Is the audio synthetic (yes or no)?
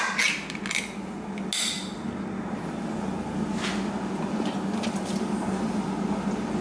no